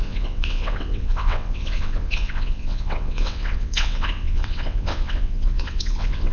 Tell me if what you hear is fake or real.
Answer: fake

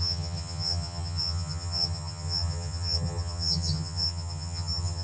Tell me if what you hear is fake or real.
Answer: fake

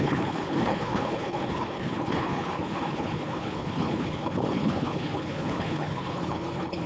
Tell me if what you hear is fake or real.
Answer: fake